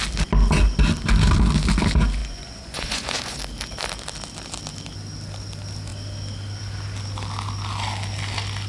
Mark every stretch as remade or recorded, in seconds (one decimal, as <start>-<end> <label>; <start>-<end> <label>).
0.0-2.2 recorded; 2.2-3.4 remade; 3.4-8.7 recorded